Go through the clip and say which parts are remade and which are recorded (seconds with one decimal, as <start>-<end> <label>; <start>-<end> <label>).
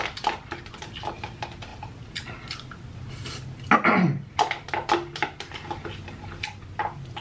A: 0.0-1.7 recorded; 1.7-3.3 remade; 3.3-7.2 recorded